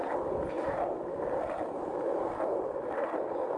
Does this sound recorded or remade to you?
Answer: recorded